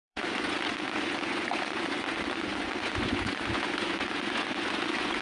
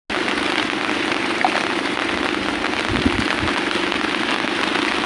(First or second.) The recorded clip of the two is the second